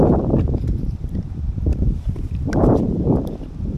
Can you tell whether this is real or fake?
fake